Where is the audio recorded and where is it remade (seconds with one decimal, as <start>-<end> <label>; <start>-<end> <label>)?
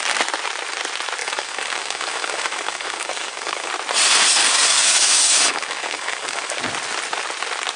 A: 0.0-1.2 recorded; 1.2-3.7 remade; 3.7-4.4 recorded; 4.4-6.6 remade; 6.6-7.8 recorded